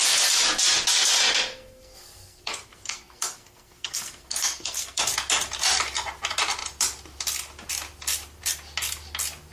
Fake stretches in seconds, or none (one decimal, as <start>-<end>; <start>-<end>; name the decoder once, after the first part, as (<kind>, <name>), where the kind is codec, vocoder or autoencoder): 1.5-5.0 (codec, SNAC)